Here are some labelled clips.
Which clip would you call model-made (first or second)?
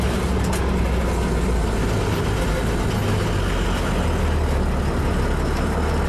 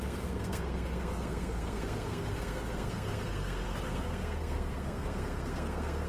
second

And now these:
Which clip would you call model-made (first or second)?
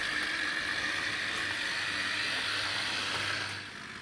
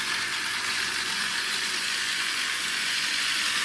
second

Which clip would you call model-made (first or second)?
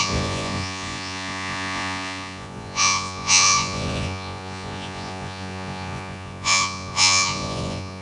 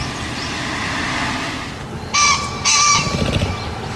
first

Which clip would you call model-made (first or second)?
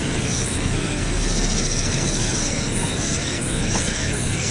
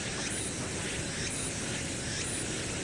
first